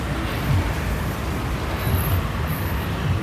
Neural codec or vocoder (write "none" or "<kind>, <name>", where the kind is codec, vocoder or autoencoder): none